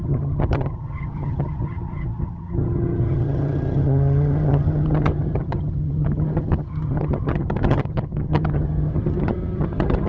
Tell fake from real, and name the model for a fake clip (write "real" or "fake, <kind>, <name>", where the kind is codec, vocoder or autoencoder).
fake, vocoder, HiFi-GAN